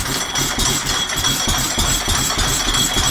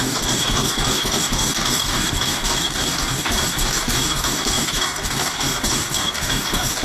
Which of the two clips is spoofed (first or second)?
second